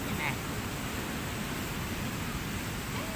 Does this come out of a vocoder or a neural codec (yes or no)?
no